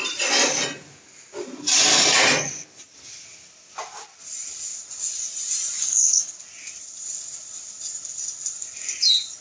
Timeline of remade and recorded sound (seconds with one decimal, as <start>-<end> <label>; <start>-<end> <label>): 0.0-5.8 recorded; 5.8-6.3 remade; 6.3-9.4 recorded